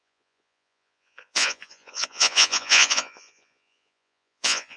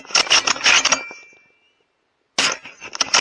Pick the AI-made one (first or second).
first